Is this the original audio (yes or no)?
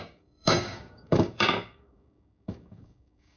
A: no